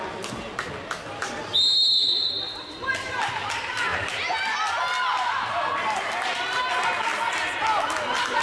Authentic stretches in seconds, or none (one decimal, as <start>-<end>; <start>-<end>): 0.0-8.4